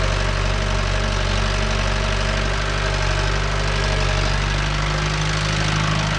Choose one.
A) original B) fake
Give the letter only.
A